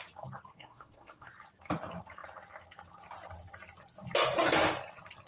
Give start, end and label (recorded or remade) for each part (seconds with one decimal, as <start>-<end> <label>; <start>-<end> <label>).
0.0-0.5 recorded; 0.5-1.3 remade; 1.3-5.3 recorded